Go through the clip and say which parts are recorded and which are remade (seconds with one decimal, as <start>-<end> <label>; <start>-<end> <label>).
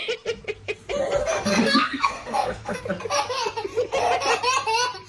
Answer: 0.0-1.2 recorded; 1.2-2.8 remade; 2.8-5.1 recorded